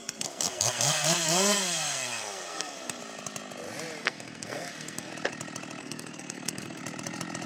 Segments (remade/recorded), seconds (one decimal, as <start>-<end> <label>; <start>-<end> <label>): 0.0-3.0 remade; 3.0-4.0 recorded; 4.0-5.1 remade; 5.1-5.8 recorded; 5.8-6.8 remade; 6.8-7.5 recorded